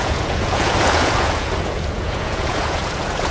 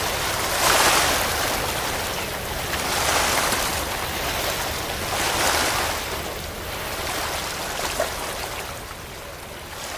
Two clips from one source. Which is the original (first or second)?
second